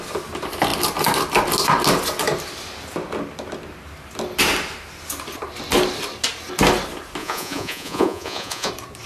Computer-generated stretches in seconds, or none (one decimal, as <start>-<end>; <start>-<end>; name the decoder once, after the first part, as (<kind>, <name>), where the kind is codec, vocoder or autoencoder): 7.2-8.7 (vocoder, Vocos)